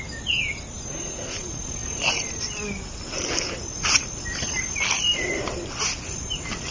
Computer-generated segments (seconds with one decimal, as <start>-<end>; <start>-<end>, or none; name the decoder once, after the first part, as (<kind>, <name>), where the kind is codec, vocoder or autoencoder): none